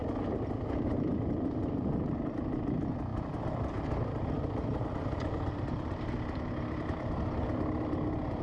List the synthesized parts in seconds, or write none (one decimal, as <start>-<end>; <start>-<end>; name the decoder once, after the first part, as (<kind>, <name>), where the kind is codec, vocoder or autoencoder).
none